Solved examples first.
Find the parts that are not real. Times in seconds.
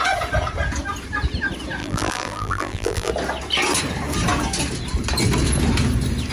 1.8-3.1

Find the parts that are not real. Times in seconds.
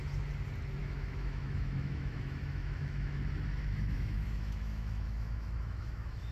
0.8-3.2; 3.6-6.3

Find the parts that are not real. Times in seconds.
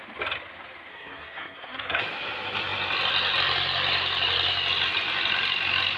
0.9-2.0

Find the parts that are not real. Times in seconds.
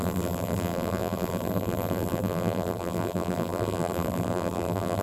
0.0-5.0